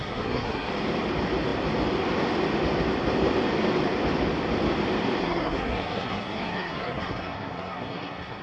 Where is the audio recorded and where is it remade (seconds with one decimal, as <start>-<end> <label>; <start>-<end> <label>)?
0.0-0.7 remade; 0.7-5.2 recorded; 5.2-8.4 remade